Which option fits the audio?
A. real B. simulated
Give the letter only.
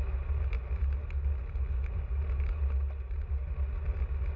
A